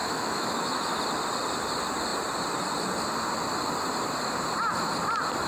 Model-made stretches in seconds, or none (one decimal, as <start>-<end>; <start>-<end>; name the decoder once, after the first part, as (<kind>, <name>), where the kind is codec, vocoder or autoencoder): 0.0-1.0 (autoencoder, DAC-VAE)